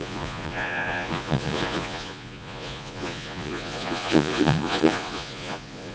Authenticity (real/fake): fake